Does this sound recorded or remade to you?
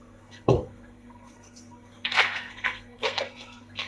remade